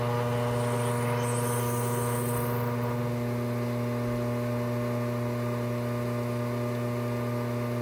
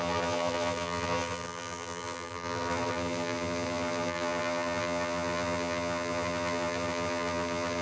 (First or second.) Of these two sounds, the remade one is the second